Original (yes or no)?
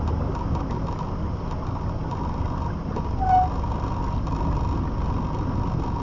yes